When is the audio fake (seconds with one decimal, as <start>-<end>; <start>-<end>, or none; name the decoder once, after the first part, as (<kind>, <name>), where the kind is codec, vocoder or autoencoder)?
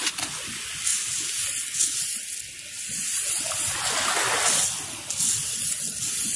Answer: none